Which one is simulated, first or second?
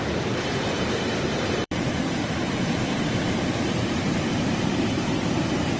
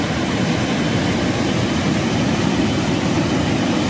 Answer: first